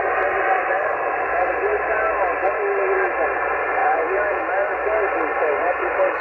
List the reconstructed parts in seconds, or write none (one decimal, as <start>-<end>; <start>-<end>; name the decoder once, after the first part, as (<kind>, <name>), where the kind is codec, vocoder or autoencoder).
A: 3.8-4.4 (vocoder, Vocos)